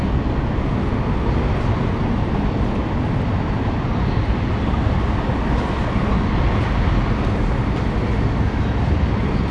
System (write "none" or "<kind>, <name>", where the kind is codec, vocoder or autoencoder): none